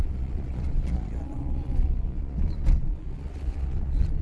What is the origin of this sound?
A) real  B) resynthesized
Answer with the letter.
B